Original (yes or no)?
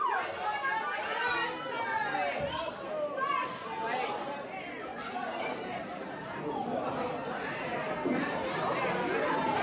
yes